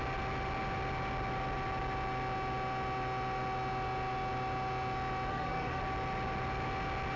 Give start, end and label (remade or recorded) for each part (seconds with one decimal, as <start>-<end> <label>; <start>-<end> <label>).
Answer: 0.0-5.3 recorded; 5.3-5.8 remade; 5.8-7.2 recorded